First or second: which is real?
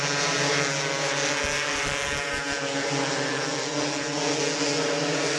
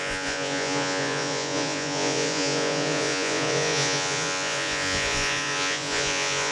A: first